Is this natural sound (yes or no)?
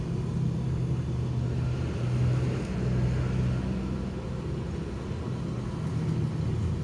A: yes